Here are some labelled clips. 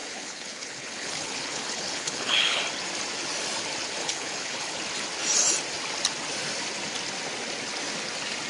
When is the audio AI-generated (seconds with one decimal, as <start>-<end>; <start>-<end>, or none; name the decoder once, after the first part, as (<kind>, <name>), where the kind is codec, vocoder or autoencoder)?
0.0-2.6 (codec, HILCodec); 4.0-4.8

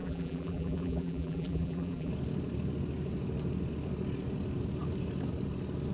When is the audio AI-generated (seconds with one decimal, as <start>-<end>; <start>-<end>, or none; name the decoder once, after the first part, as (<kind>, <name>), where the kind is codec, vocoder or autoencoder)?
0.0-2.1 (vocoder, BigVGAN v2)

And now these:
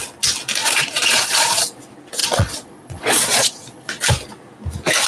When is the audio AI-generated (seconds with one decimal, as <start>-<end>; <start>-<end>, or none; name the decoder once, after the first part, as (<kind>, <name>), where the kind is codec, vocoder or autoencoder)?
0.6-1.6 (vocoder, Vocos); 2.2-4.0

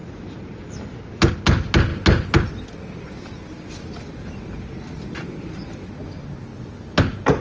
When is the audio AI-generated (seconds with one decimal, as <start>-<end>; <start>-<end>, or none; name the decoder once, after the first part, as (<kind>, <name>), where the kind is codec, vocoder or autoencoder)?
none

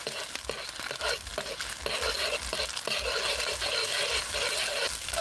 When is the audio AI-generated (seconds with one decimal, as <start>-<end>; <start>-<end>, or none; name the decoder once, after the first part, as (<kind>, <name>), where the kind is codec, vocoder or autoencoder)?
none

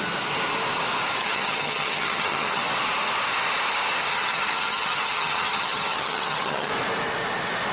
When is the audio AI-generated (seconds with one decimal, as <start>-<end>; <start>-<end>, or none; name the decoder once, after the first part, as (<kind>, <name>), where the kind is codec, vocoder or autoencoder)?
1.2-2.6 (vocoder, HiFi-GAN); 4.1-6.7